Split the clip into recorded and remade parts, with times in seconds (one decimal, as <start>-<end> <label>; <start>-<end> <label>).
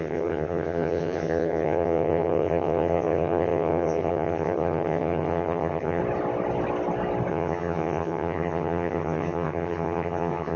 0.0-6.0 remade; 6.0-7.3 recorded; 7.3-10.6 remade